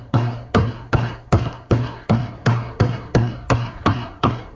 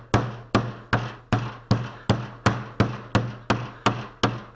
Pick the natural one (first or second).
second